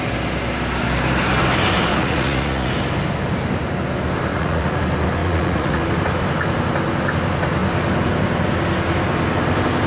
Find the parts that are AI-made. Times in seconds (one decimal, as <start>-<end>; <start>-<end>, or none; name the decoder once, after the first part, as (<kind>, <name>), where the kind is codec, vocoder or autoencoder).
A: 1.9-2.7 (vocoder, Vocos); 4.3-4.8; 5.2-5.8